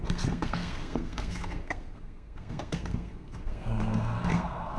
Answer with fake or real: fake